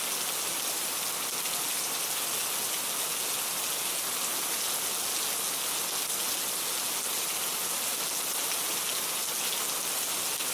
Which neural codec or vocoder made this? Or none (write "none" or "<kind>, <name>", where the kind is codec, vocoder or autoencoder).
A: none